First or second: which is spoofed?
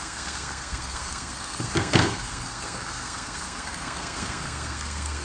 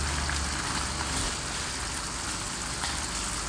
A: first